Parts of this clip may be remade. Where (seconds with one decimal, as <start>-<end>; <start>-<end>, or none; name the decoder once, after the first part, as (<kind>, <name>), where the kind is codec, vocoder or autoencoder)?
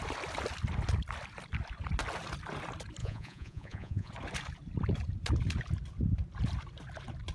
3.0-4.1 (vocoder, Vocos)